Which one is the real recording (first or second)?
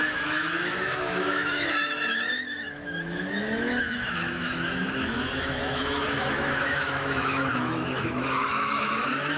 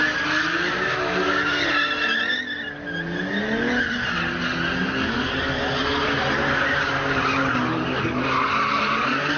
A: second